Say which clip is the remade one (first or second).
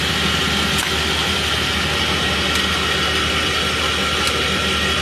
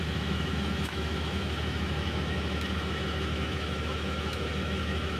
second